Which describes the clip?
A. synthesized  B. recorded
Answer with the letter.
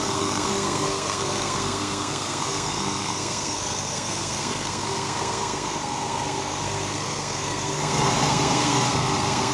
A